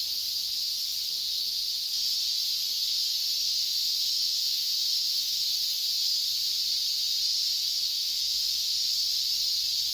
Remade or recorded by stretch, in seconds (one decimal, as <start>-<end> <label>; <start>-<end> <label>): 0.0-3.4 recorded; 3.4-5.4 remade; 5.4-7.9 recorded; 7.9-8.8 remade; 8.8-9.9 recorded